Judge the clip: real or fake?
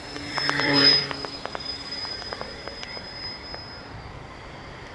fake